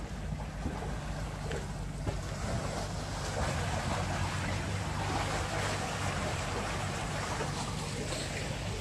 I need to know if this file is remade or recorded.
recorded